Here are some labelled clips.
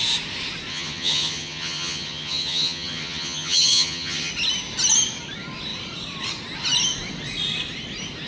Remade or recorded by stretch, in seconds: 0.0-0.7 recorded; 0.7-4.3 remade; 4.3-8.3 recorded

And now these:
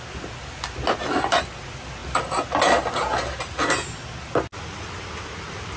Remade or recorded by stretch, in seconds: 0.0-5.8 recorded

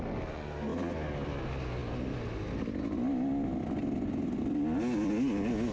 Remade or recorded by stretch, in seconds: 0.0-5.7 recorded

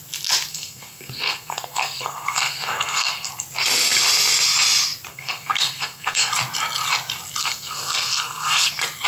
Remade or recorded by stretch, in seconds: 0.0-0.5 recorded; 0.5-3.3 remade; 3.3-5.1 recorded; 5.1-6.3 remade; 6.3-7.4 recorded; 7.4-8.7 remade; 8.7-9.1 recorded

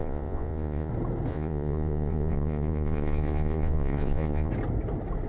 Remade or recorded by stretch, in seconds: 0.0-0.9 remade; 0.9-1.3 recorded; 1.3-4.5 remade; 4.5-5.3 recorded